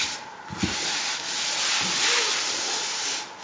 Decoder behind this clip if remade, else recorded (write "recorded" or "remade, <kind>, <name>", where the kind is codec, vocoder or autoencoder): recorded